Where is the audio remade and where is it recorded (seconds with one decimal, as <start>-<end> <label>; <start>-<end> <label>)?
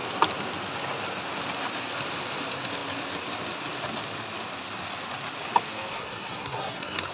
0.0-5.9 recorded; 5.9-7.1 remade